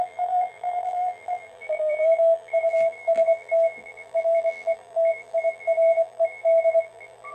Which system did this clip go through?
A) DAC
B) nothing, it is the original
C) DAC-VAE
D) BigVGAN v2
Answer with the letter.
D